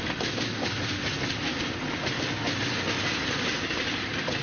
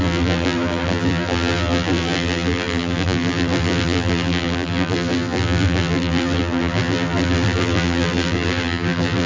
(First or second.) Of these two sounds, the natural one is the first